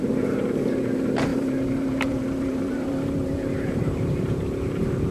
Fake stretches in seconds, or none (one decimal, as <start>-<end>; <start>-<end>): 1.3-4.4